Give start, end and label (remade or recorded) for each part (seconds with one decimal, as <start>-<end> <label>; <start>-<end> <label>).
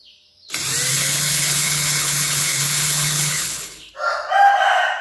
0.0-0.9 recorded; 0.9-3.9 remade; 3.9-5.0 recorded